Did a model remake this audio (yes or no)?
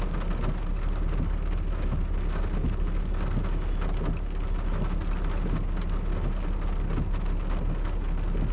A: no